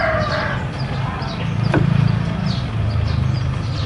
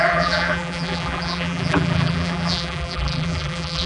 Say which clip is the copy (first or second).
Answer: second